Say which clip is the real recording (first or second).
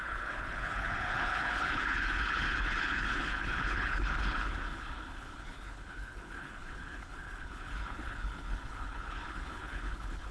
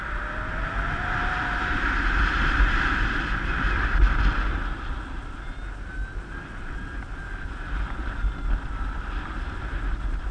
second